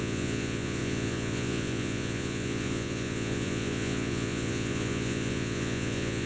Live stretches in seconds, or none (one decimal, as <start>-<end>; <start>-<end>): none